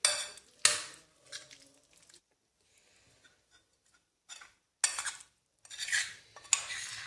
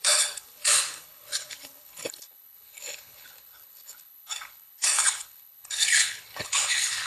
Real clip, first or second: first